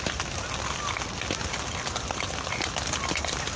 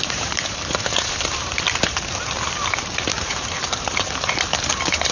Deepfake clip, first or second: second